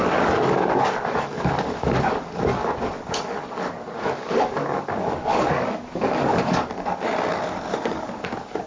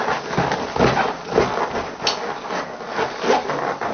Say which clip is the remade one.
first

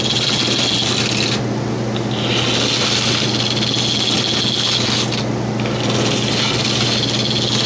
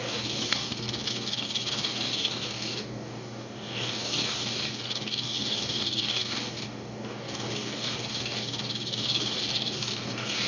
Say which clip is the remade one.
second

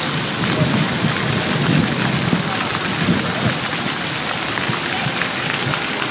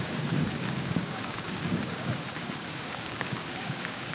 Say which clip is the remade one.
second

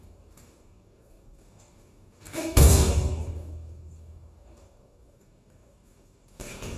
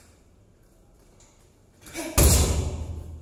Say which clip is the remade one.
first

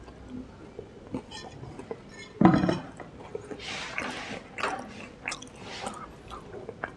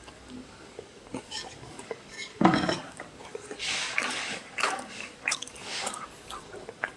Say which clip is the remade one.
second